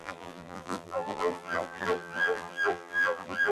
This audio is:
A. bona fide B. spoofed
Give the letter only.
B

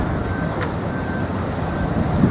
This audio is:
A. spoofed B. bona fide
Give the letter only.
A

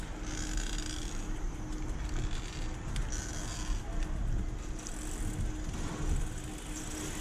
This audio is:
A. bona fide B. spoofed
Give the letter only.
A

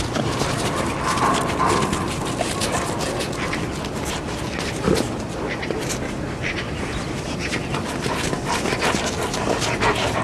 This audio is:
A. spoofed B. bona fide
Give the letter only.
B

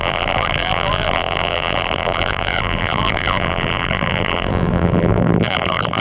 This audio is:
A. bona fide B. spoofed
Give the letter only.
B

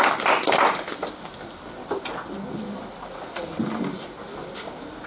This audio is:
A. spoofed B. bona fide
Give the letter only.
B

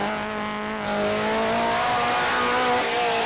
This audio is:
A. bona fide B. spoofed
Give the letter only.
A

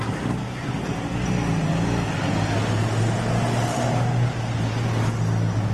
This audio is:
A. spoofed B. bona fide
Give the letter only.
B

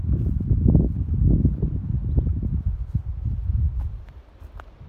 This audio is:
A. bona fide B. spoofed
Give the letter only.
B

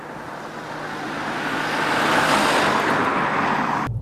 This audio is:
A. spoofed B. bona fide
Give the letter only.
B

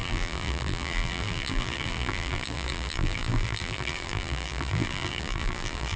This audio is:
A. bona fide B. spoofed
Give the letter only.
B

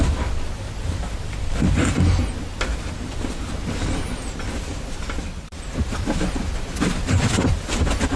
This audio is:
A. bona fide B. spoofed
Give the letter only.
A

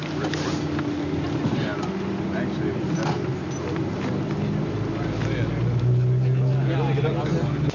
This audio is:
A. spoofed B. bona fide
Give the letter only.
B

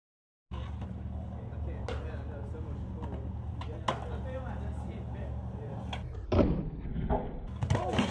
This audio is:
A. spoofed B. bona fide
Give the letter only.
B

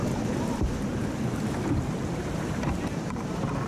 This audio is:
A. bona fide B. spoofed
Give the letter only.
B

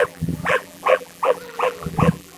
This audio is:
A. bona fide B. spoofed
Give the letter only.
B